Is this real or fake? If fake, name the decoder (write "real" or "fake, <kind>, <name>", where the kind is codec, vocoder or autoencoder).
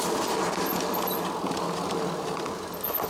real